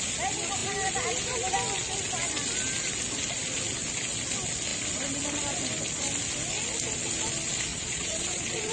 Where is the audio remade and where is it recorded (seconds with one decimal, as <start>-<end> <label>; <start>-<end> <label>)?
0.0-7.7 recorded; 7.7-8.7 remade